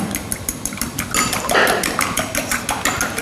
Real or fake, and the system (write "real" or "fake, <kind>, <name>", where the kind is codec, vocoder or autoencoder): real